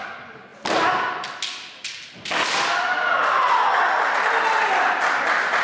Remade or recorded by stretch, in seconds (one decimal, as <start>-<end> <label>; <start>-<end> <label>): 0.0-5.6 recorded